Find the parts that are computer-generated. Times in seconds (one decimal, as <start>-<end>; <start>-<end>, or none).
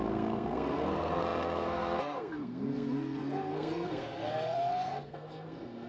0.0-5.9